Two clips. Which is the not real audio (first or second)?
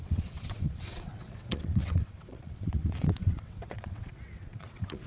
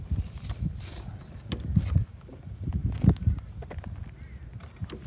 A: first